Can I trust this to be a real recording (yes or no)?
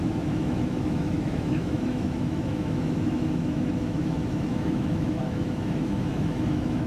no